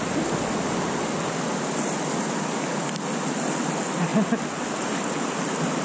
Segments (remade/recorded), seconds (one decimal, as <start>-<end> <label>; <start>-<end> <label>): 0.0-5.8 recorded